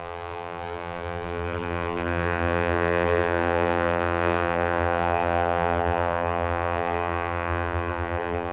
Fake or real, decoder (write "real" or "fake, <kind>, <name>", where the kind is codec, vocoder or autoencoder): fake, vocoder, BigVGAN v2